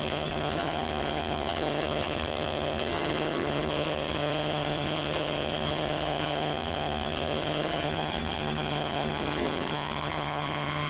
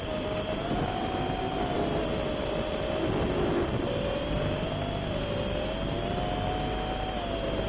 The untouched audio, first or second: second